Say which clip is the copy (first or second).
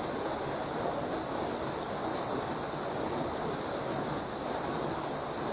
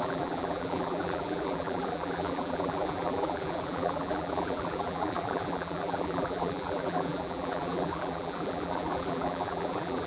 second